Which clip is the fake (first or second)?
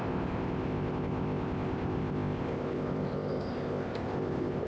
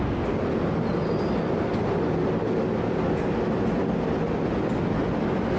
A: first